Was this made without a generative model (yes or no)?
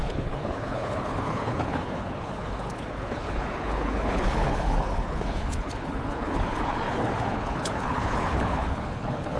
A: no